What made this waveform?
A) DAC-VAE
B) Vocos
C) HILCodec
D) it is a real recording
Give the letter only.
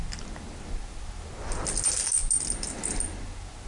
D